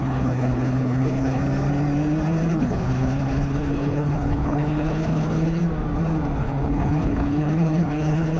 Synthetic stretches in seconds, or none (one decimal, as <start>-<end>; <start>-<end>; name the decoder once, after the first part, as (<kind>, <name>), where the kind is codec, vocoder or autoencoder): 0.0-1.4 (codec, HILCodec); 2.5-5.6; 6.4-8.4